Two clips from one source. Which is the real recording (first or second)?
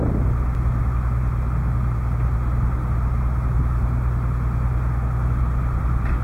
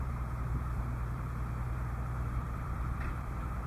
first